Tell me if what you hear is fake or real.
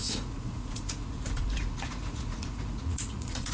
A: fake